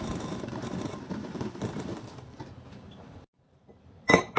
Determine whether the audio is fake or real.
fake